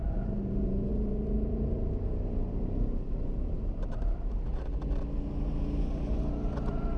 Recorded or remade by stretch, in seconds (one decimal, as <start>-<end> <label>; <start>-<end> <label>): 0.0-4.5 remade; 4.5-7.0 recorded